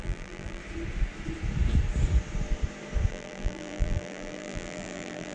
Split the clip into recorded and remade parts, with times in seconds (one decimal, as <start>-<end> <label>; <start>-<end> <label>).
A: 0.0-0.6 remade; 0.6-3.1 recorded; 3.1-5.3 remade